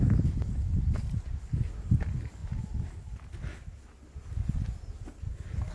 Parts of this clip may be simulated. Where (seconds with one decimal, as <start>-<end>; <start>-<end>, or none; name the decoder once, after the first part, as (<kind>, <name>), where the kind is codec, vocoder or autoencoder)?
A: none